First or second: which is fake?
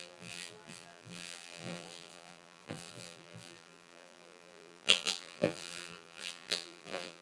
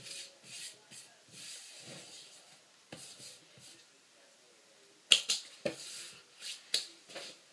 first